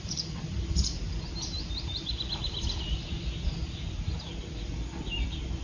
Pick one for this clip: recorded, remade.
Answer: recorded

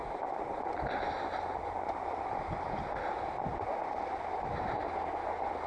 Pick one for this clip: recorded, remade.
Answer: recorded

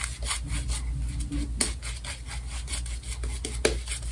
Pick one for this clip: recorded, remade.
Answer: recorded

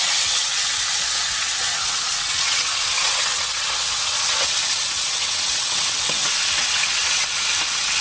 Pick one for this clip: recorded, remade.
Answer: remade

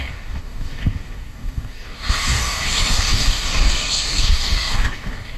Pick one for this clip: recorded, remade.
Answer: remade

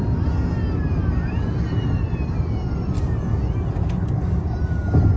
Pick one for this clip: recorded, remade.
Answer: recorded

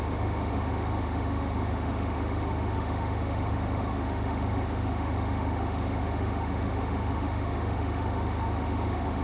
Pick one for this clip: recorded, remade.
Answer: remade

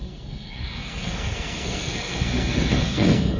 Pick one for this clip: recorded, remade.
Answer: remade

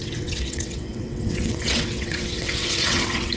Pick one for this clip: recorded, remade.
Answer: remade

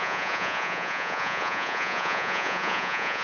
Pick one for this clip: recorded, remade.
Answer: remade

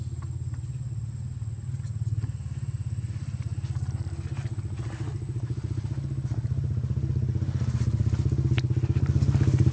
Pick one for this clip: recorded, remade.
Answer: recorded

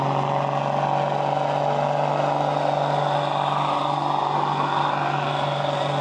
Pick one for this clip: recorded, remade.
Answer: recorded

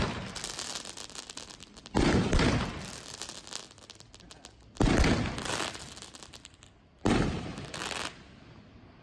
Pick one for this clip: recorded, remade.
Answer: recorded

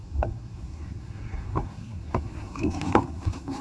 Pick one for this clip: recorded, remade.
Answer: remade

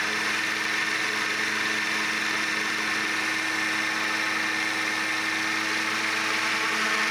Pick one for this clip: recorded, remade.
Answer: recorded